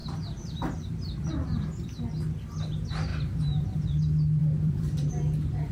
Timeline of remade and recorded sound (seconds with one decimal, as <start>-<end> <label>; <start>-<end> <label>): 0.0-1.3 remade; 1.3-3.1 recorded; 3.1-4.0 remade; 4.0-4.4 recorded; 4.4-5.1 remade; 5.1-5.7 recorded